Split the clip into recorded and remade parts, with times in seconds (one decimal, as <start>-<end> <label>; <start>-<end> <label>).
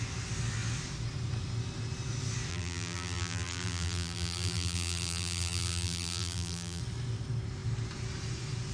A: 0.0-2.5 recorded; 2.5-6.8 remade; 6.8-8.7 recorded